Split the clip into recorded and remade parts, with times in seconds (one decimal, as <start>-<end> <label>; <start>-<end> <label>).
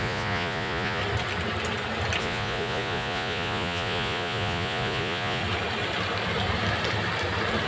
0.0-1.0 remade; 1.0-2.2 recorded; 2.2-5.4 remade; 5.4-7.7 recorded